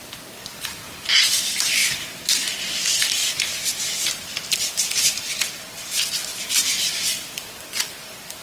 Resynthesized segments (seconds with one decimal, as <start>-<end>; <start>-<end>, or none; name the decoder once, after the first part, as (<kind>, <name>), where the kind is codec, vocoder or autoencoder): 0.0-1.8 (vocoder, BigVGAN v2); 2.5-3.2; 4.2-6.2; 6.9-8.4